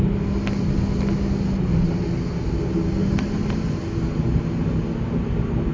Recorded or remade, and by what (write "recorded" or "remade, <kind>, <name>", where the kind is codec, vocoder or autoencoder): recorded